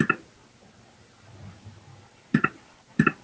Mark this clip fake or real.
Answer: real